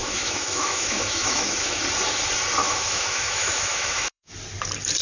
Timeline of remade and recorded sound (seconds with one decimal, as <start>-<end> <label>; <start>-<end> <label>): 0.0-1.8 remade; 1.8-2.6 recorded; 2.6-4.3 remade; 4.3-5.0 recorded